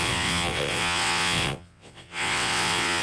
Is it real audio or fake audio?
fake